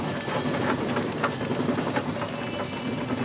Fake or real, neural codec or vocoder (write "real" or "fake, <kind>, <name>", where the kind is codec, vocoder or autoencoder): real